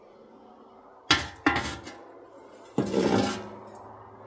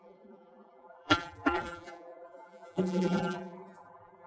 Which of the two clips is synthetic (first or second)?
second